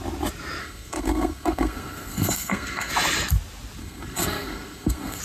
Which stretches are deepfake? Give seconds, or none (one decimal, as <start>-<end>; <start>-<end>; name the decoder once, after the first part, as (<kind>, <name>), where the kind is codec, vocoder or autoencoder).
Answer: 0.6-2.9 (codec, SNAC); 3.8-5.2